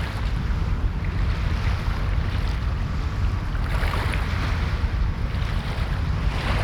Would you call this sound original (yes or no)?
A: no